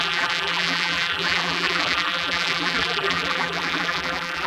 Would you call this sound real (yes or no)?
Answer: no